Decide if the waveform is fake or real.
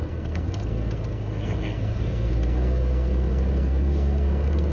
fake